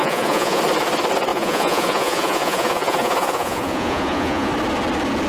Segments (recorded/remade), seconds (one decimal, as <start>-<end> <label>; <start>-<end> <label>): 0.0-0.6 remade; 0.6-1.3 recorded; 1.3-4.5 remade; 4.5-5.3 recorded